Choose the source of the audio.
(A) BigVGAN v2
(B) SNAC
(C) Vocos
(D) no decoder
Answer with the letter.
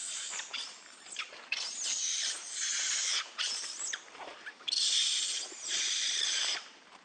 A